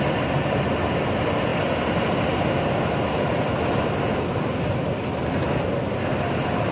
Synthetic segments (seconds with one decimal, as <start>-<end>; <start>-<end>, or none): none